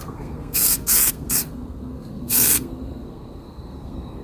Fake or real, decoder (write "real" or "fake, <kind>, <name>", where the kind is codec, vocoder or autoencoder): fake, codec, SNAC